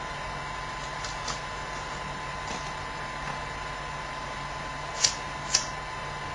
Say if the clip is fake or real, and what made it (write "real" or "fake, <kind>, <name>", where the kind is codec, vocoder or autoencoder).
real